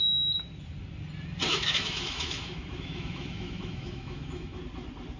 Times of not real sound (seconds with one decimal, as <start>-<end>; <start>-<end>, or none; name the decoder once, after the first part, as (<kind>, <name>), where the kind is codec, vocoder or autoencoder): 1.5-4.6 (autoencoder, DAC-VAE)